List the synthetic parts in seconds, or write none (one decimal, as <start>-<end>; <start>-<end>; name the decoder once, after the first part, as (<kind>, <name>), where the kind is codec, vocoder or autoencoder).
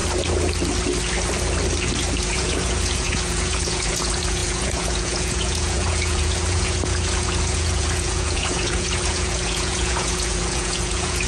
2.2-11.3 (vocoder, Vocos)